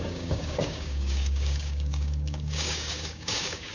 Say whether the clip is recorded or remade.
remade